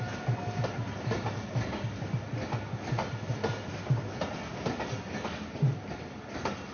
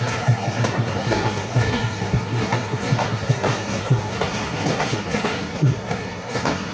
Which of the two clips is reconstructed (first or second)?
second